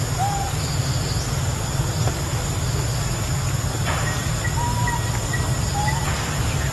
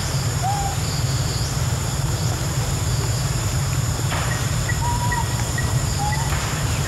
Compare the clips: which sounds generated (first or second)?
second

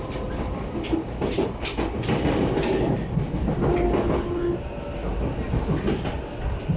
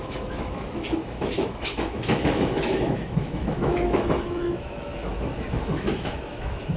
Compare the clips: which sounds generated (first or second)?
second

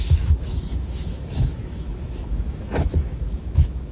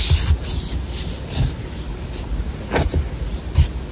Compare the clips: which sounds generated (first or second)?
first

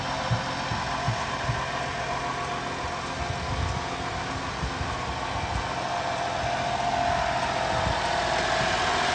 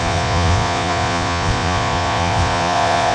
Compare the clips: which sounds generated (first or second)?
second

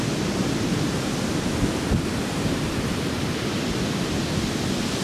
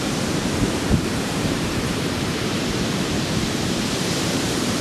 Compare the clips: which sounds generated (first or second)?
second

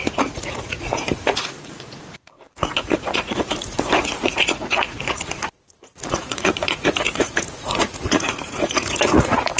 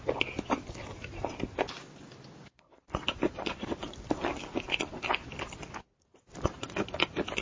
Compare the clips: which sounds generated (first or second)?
first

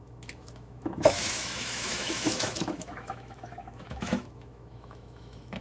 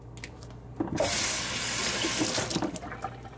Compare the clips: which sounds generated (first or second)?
first